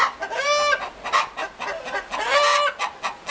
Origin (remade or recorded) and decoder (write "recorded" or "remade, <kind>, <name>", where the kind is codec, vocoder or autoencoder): recorded